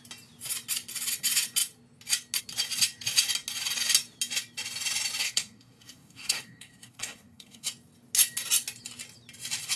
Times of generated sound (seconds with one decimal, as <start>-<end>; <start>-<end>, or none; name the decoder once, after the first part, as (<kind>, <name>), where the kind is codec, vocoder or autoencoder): 5.2-7.7 (codec, SNAC)